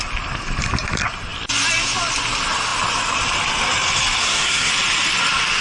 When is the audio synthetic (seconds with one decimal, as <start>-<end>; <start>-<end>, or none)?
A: 4.2-4.7